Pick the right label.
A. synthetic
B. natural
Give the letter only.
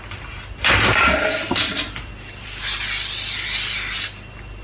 B